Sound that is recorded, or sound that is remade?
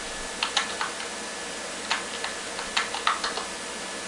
recorded